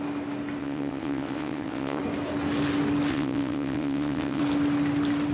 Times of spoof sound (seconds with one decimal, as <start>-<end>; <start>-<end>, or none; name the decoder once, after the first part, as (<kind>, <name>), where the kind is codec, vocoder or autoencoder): 0.6-2.0 (vocoder, WaveNeXt); 3.1-4.4